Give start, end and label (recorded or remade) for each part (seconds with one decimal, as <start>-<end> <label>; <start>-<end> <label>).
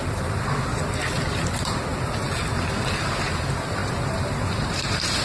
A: 0.0-0.7 remade; 0.7-1.3 recorded; 1.3-1.9 remade; 1.9-3.3 recorded; 3.3-5.2 remade